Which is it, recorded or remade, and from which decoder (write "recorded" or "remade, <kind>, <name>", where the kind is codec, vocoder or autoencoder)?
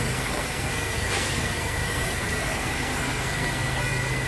remade, codec, SNAC